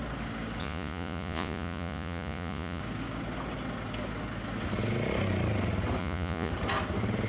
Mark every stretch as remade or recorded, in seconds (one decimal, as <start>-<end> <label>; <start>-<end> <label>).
0.0-0.6 recorded; 0.6-2.8 remade; 2.8-6.0 recorded; 6.0-6.5 remade; 6.5-7.3 recorded